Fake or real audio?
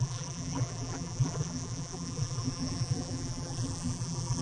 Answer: fake